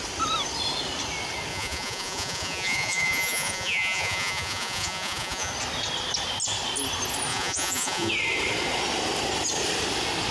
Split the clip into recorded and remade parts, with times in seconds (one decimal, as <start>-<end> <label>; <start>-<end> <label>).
0.0-1.5 recorded; 1.5-5.5 remade; 5.5-7.3 recorded; 7.3-8.1 remade; 8.1-10.3 recorded